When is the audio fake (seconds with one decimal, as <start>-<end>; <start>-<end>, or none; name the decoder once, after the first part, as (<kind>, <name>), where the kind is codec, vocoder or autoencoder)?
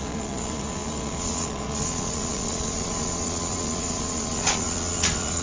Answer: 0.0-5.4 (vocoder, Vocos)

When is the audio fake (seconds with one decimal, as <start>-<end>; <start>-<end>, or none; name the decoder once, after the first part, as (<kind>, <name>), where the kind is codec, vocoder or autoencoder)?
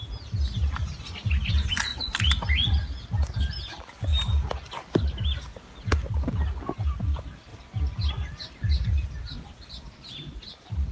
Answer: none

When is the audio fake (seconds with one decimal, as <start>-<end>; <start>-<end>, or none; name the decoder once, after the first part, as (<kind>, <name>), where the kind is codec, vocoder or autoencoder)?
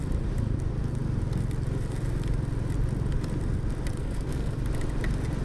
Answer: 4.0-4.6 (codec, SNAC)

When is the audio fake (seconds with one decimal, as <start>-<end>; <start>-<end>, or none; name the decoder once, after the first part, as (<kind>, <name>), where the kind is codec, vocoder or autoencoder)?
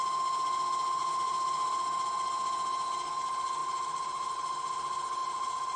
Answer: 1.0-1.7 (vocoder, BigVGAN v2); 3.6-4.3; 5.2-5.8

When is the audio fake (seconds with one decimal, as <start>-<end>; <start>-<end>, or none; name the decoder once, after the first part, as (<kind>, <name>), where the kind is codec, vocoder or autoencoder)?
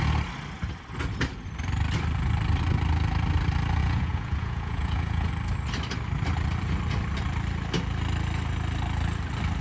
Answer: 3.8-5.3 (vocoder, Vocos)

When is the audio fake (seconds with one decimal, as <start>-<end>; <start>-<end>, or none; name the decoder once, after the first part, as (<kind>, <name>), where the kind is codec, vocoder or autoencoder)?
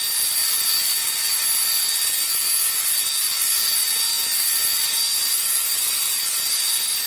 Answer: none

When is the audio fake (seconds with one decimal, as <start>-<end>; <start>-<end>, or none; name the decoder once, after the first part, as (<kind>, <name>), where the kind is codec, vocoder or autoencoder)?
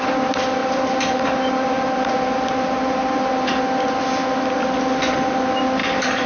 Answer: 0.6-3.6 (vocoder, BigVGAN v2); 5.8-6.3